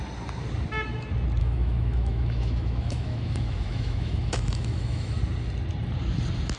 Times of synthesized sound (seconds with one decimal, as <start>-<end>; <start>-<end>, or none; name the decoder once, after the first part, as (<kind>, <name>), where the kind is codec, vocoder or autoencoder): 1.4-5.2 (autoencoder, DAC-VAE)